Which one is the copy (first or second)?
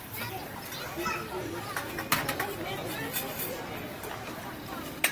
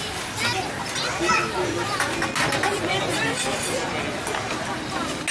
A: first